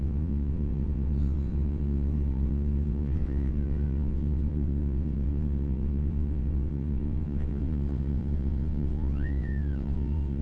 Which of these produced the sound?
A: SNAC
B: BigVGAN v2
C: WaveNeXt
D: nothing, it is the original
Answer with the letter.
C